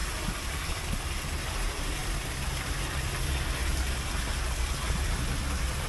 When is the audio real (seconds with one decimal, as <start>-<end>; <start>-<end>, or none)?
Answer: none